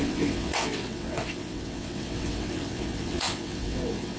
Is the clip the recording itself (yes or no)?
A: no